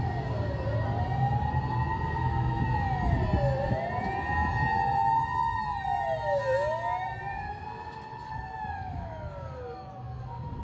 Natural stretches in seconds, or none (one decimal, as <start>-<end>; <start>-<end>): 0.0-8.1